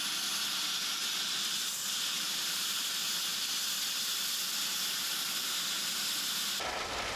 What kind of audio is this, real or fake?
real